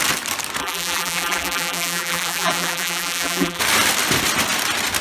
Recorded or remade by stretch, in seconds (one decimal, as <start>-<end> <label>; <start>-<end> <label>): 0.0-0.6 recorded; 0.6-3.6 remade; 3.6-5.0 recorded